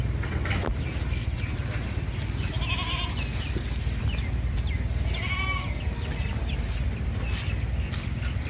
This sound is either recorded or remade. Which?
recorded